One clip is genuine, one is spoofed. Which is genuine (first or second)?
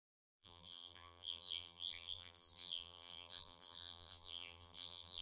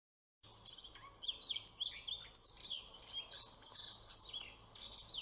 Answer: second